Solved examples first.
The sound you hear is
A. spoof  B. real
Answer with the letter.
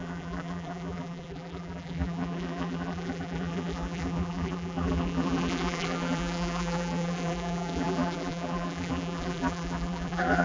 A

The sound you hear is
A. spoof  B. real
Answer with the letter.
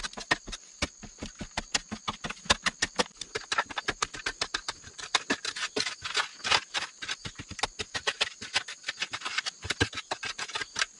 B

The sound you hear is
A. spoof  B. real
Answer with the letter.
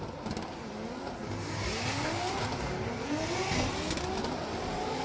B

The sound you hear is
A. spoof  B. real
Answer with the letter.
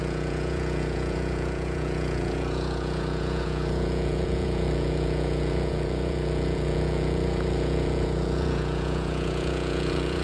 A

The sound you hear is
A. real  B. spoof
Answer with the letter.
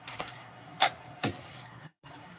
B